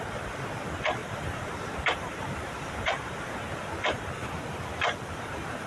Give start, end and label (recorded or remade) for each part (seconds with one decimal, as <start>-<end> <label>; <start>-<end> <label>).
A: 0.0-1.0 recorded; 1.0-3.6 remade; 3.6-5.7 recorded